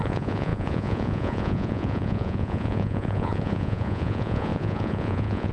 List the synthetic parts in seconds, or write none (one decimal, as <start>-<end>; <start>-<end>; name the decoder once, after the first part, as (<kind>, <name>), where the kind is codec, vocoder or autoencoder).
0.0-5.5 (vocoder, Vocos)